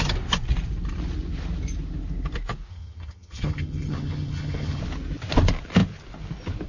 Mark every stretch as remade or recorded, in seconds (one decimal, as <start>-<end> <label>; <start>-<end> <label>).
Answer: 0.0-2.7 recorded; 2.7-4.8 remade; 4.8-6.7 recorded